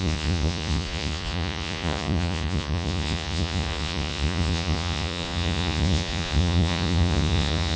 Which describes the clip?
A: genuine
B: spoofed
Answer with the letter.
B